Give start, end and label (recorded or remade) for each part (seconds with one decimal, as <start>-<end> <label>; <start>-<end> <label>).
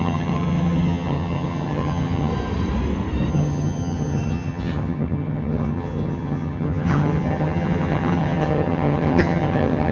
0.0-2.3 remade; 2.3-3.3 recorded; 3.3-9.9 remade